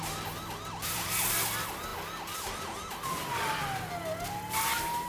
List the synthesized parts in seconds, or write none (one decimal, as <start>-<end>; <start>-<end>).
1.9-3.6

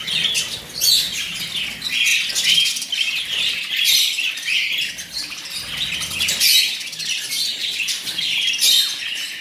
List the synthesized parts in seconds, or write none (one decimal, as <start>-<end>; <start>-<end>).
2.1-4.9; 7.6-8.4

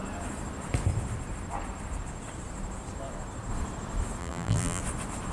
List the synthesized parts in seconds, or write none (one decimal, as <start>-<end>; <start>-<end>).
4.2-4.8